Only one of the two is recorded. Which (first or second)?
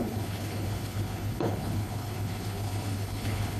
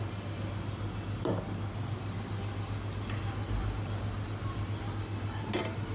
second